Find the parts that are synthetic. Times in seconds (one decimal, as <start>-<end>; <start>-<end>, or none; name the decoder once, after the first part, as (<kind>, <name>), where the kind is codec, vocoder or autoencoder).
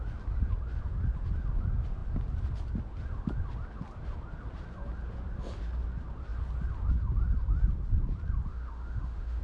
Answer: 8.5-9.4 (autoencoder, DAC-VAE)